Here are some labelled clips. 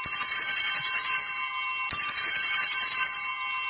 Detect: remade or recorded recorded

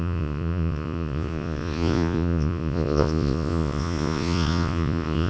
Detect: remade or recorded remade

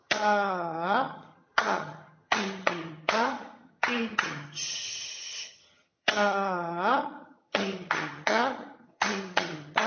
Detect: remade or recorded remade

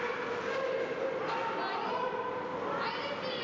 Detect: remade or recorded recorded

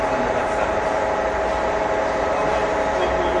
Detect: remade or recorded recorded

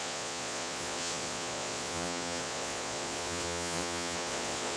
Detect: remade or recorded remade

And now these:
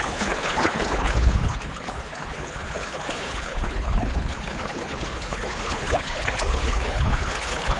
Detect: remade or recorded remade